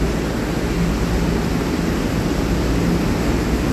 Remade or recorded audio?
recorded